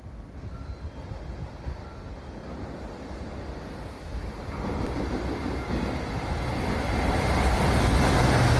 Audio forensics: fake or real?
real